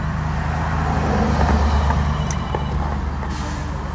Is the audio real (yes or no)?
yes